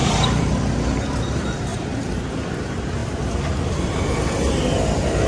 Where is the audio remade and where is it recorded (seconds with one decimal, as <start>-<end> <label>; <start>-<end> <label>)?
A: 0.0-0.5 remade; 0.5-5.3 recorded